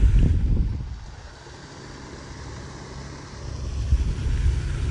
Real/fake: real